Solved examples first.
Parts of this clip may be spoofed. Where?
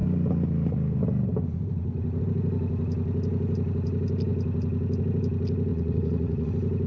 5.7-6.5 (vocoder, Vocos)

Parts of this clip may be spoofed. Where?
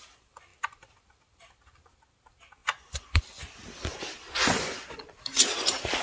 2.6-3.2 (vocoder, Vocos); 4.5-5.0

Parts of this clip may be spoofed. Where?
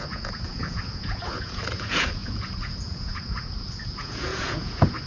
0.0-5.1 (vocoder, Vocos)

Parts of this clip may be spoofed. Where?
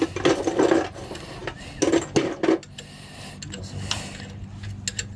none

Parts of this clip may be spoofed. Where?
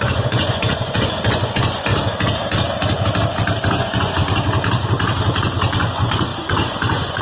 0.0-1.9 (vocoder, Vocos); 3.8-4.2; 5.4-7.2